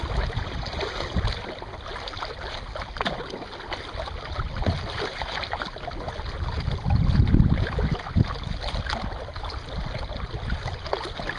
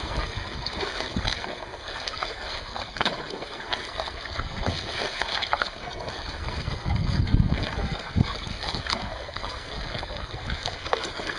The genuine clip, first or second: first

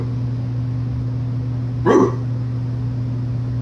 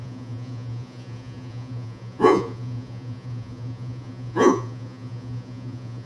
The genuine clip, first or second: first